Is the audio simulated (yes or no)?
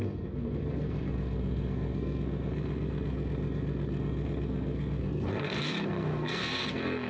yes